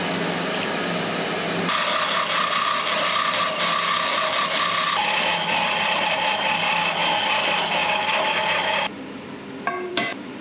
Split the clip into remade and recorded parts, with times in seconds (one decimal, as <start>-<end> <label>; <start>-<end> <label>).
0.0-10.4 recorded